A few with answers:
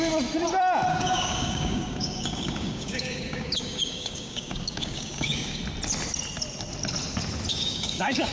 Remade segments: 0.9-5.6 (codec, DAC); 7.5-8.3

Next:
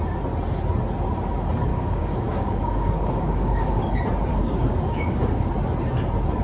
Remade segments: 1.7-3.8 (codec, DAC); 4.3-5.5

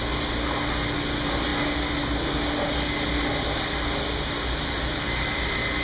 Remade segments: none

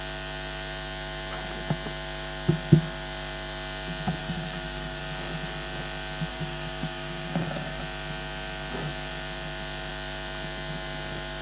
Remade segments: 4.2-5.0 (codec, DAC); 6.3-7.8

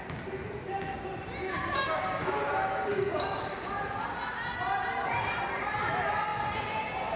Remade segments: 1.4-3.7 (codec, DAC)

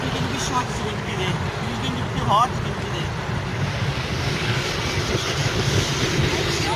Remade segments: 0.6-1.2 (codec, DAC); 3.5-4.7; 5.4-5.9

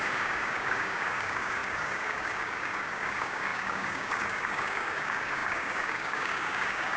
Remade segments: 0.0-7.0 (codec, DAC)